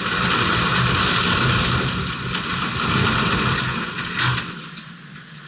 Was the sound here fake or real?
real